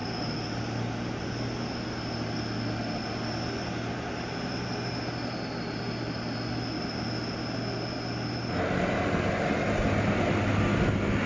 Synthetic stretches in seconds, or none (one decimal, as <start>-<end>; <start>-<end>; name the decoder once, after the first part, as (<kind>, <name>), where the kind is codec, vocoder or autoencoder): none